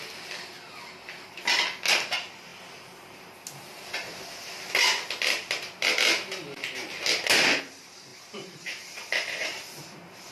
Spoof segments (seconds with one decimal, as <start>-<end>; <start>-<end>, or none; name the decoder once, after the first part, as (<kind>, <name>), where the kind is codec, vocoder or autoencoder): 8.1-10.3 (vocoder, BigVGAN v2)